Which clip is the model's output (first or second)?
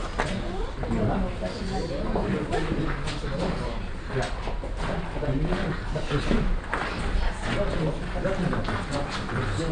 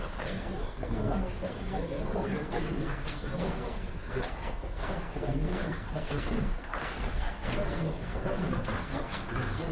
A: second